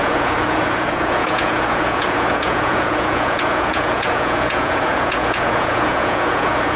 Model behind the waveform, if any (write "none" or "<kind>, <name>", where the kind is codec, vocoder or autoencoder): vocoder, Vocos